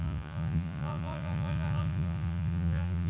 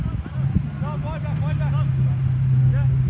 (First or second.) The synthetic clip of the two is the first